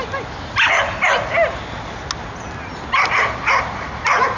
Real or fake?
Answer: real